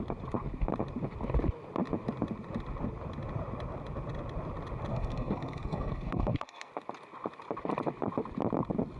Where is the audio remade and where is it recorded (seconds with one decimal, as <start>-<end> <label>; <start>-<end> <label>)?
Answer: 0.0-4.9 recorded; 4.9-6.7 remade; 6.7-9.0 recorded